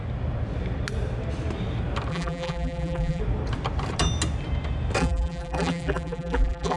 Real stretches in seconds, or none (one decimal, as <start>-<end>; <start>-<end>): 0.0-2.1; 3.2-5.0

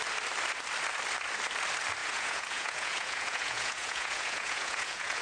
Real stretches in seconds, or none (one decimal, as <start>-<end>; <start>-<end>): 0.0-2.0

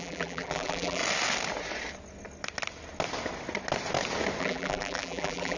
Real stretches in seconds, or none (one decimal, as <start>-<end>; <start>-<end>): 1.0-4.4

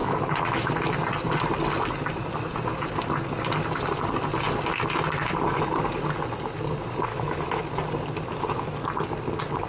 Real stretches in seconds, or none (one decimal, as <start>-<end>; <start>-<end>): 0.7-7.1; 7.6-9.7